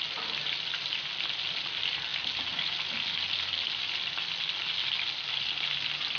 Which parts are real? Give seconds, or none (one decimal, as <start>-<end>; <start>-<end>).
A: 0.0-6.2